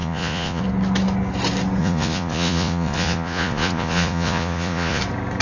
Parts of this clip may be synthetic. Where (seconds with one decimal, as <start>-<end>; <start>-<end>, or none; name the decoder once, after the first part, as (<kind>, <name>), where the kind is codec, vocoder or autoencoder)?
0.0-0.6 (vocoder, Vocos); 1.8-5.0